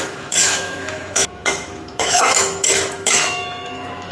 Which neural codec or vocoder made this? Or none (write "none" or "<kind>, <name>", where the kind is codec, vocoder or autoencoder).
autoencoder, DAC-VAE